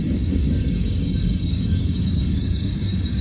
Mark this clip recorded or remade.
remade